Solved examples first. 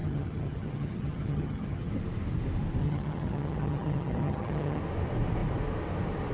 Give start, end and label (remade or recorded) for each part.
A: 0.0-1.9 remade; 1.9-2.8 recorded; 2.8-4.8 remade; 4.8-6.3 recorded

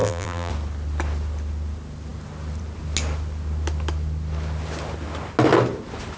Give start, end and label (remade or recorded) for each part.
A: 0.0-0.5 remade; 0.5-6.2 recorded

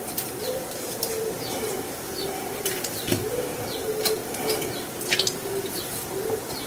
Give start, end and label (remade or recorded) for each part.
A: 0.0-6.7 recorded